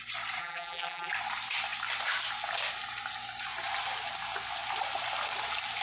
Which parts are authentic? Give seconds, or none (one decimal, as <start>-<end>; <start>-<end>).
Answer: 0.0-0.4; 1.1-5.8